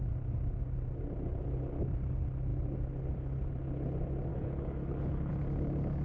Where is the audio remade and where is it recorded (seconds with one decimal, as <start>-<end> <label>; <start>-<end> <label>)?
0.0-4.3 recorded; 4.3-5.3 remade; 5.3-6.0 recorded